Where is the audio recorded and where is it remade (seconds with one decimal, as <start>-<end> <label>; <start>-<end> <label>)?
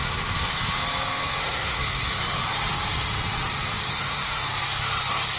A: 0.0-1.4 recorded; 1.4-1.8 remade; 1.8-3.9 recorded; 3.9-4.4 remade; 4.4-5.4 recorded